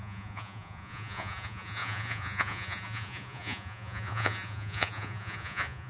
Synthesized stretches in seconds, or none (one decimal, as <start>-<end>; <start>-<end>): 0.0-5.9